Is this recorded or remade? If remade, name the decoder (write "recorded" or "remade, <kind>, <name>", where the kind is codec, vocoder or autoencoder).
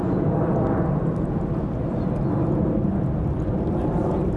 recorded